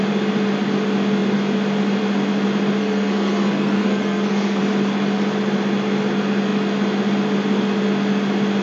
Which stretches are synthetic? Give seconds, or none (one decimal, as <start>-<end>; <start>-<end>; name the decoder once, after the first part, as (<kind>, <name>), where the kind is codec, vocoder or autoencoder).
2.8-4.6 (codec, SNAC)